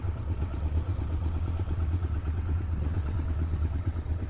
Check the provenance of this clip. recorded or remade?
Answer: remade